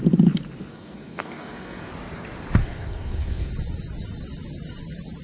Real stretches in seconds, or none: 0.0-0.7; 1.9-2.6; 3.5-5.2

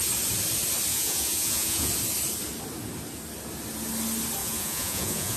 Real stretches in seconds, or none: 0.0-0.9; 1.9-4.4

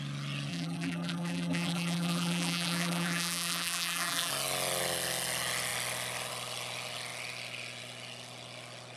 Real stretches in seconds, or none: 0.0-0.5; 4.3-9.0

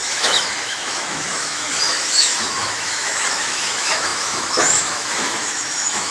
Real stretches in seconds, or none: none

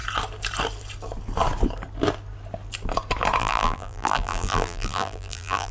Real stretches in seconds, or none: 0.0-3.4

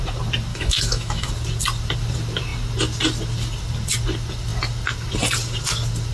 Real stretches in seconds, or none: 0.0-0.5; 1.3-6.1

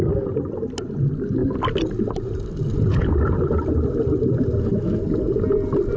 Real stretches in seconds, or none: 0.0-6.0

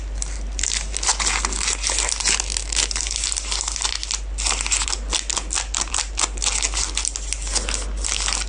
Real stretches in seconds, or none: 0.0-8.5